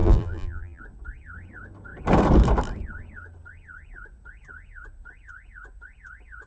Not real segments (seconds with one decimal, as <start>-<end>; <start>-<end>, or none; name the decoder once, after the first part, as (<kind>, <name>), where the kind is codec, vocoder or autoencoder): 0.0-0.8 (vocoder, BigVGAN v2)